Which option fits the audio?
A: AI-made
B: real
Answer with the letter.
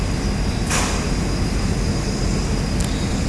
B